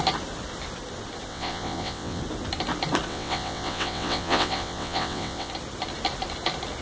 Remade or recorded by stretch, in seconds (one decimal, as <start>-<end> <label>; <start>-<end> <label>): 0.0-1.3 recorded; 1.3-2.2 remade; 2.2-3.1 recorded; 3.1-5.5 remade; 5.5-6.8 recorded

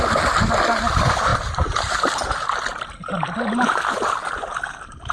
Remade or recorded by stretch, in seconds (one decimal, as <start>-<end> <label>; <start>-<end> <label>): 0.0-5.1 recorded

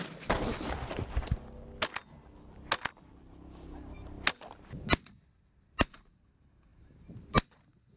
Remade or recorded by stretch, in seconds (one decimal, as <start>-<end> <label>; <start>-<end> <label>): 0.0-8.0 recorded